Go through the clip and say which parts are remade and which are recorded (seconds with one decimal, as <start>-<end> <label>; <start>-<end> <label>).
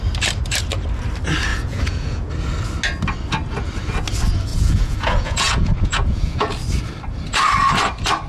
0.0-1.5 recorded; 1.5-2.3 remade; 2.3-4.5 recorded; 4.5-6.5 remade; 6.5-8.3 recorded